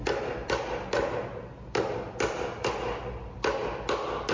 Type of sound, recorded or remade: recorded